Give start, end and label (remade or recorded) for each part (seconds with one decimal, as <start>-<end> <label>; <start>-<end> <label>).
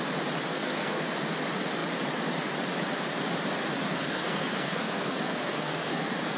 0.0-0.5 recorded; 0.5-1.0 remade; 1.0-3.9 recorded; 3.9-6.4 remade